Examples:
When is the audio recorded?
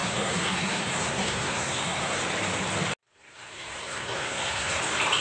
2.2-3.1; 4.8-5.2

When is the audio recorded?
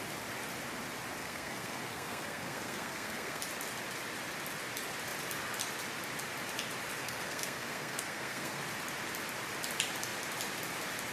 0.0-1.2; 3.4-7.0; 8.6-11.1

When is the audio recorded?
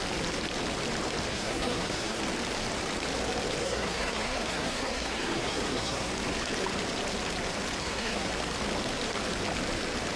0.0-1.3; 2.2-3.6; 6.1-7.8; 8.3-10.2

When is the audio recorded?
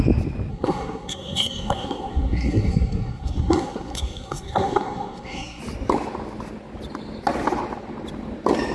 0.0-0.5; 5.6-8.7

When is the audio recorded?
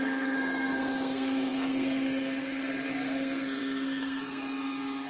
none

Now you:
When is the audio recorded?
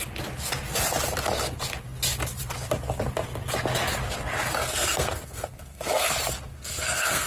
0.0-4.6; 6.1-6.5